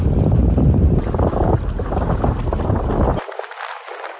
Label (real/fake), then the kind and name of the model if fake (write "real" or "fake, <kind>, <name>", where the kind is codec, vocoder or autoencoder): real